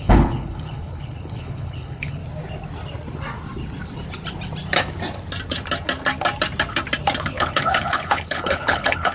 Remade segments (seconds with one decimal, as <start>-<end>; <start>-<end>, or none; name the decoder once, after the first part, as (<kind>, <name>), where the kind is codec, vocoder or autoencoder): 0.0-2.2 (codec, HILCodec); 7.2-9.1